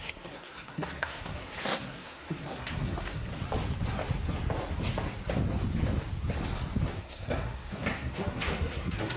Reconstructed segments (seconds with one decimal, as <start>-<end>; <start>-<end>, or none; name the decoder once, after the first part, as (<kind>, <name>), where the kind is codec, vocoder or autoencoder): 0.0-3.3 (codec, SNAC); 6.9-9.2